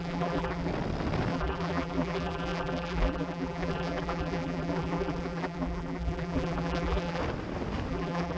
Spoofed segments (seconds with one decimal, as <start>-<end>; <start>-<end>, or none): 0.0-0.7; 1.3-7.2; 7.9-8.4

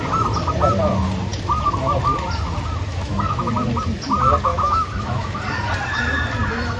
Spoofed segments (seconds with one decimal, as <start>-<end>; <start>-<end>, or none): 2.9-3.5; 4.5-5.4

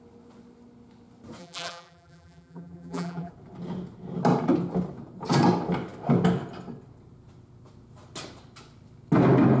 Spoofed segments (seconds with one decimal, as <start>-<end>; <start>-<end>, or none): 1.4-3.3

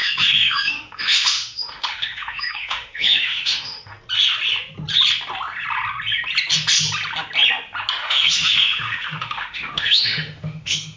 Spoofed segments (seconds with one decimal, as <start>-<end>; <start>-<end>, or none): 0.0-3.9; 8.0-11.0